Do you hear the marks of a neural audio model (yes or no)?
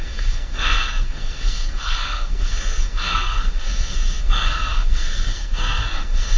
yes